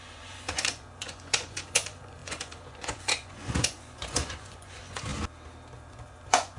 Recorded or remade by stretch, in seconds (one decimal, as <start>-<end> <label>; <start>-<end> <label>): 0.0-5.1 remade; 5.1-5.9 recorded; 5.9-6.6 remade